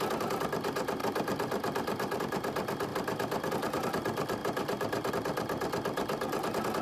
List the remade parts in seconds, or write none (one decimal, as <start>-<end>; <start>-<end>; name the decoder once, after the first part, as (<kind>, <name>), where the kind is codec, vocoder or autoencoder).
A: 1.0-2.2 (vocoder, BigVGAN v2); 2.9-3.5; 4.4-5.1